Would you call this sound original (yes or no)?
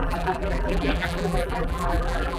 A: no